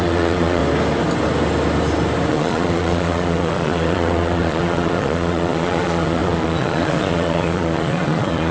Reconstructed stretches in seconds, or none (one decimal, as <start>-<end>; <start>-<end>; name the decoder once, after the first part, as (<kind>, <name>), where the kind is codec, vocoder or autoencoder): 0.0-0.6 (vocoder, Vocos); 2.3-8.5